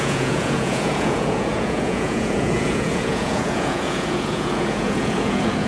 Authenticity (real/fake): fake